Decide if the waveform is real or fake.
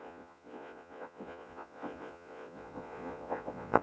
fake